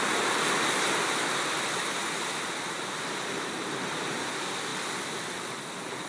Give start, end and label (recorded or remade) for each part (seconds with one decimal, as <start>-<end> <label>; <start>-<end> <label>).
0.0-6.1 recorded